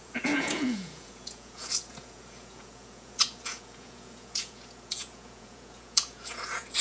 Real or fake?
fake